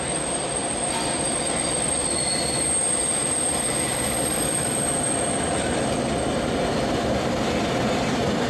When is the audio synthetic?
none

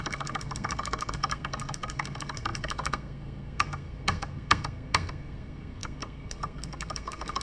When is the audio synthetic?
0.0-7.4

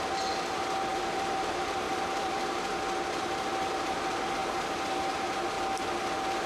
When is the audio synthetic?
0.9-2.4

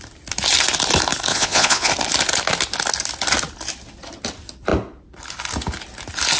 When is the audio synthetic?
1.3-1.9

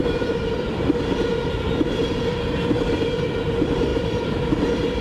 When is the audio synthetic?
0.0-0.7; 3.9-4.5

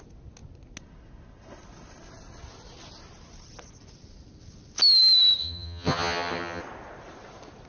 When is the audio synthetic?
5.4-6.6

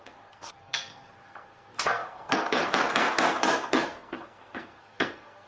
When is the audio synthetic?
0.0-5.5

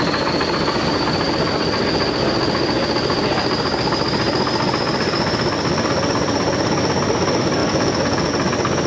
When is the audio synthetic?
7.6-8.3